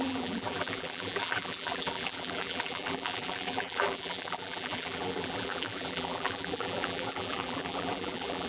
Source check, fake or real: fake